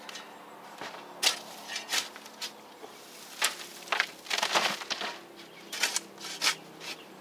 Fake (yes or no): no